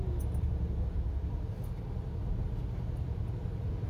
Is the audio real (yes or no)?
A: yes